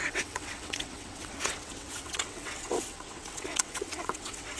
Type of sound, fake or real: fake